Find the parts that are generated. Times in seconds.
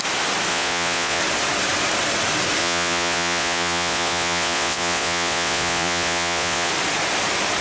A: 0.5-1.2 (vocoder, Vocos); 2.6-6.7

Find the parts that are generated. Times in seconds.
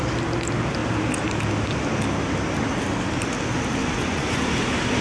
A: 3.8-4.4 (vocoder, Vocos)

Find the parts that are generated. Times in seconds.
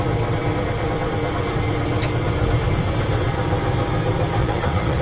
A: 4.4-5.0 (vocoder, Vocos)